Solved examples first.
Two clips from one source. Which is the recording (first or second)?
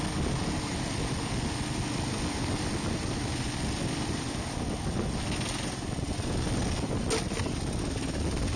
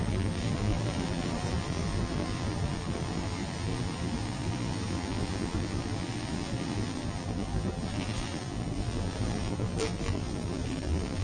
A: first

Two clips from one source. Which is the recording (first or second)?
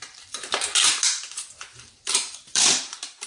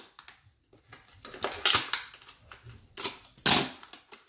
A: second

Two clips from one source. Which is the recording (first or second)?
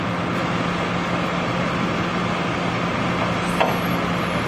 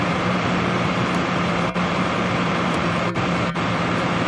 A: first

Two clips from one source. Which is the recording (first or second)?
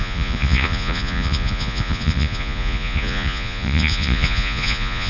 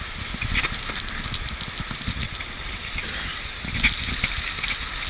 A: second